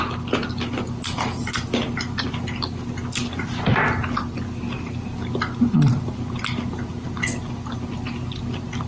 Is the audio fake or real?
real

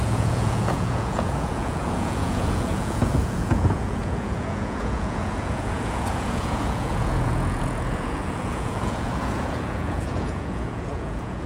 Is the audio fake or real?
fake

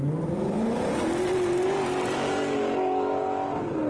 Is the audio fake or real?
real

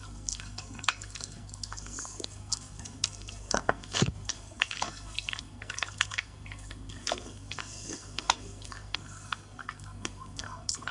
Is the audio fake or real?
fake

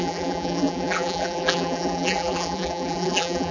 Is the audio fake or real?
fake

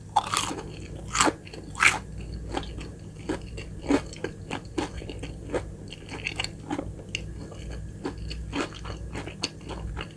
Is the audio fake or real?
real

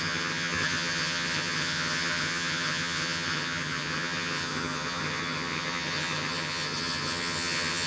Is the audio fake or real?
fake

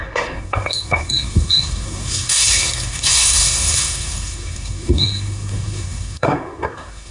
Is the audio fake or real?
fake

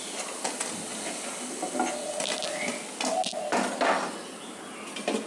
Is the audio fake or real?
real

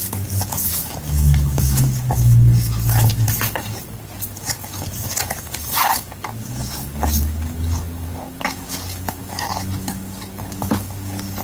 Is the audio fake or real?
fake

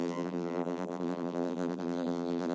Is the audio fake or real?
fake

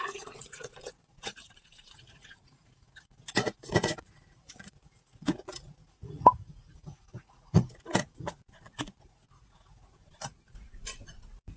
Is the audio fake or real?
fake